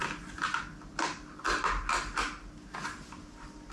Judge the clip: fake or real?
real